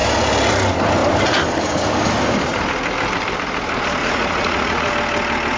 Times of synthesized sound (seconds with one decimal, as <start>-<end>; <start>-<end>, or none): 4.0-4.9